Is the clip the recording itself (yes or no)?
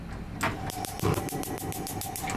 yes